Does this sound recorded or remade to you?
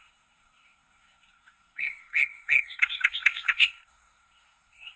remade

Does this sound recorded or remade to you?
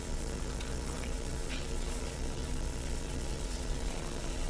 remade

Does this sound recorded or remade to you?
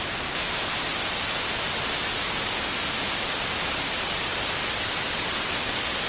recorded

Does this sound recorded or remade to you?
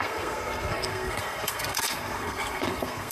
remade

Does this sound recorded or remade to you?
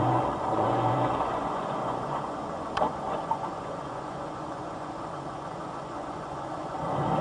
remade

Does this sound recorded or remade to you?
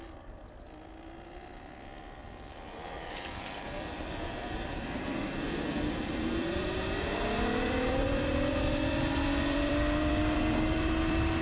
remade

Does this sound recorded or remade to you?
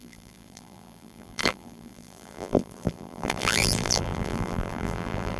remade